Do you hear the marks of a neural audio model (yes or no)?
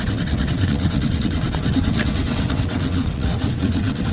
yes